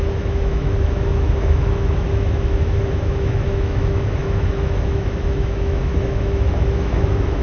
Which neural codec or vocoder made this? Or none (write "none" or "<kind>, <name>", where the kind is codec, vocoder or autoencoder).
autoencoder, DAC-VAE